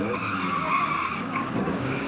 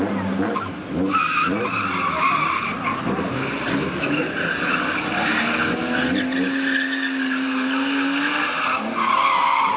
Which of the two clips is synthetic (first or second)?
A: first